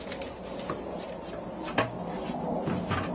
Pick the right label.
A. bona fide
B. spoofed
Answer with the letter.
A